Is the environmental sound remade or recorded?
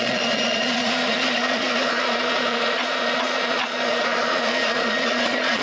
remade